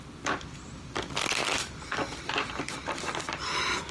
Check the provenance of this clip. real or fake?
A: real